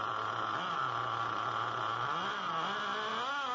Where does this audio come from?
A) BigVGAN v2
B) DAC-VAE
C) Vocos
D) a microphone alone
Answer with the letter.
D